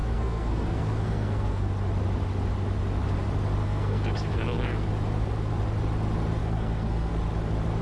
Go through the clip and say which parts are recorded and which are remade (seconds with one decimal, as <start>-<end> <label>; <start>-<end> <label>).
0.0-1.7 remade; 1.7-3.6 recorded; 3.6-4.9 remade; 4.9-6.4 recorded; 6.4-7.1 remade; 7.1-7.8 recorded